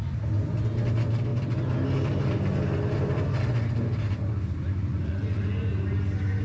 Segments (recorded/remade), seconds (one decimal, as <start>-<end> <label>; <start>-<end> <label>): 0.0-4.9 recorded; 4.9-5.5 remade; 5.5-6.4 recorded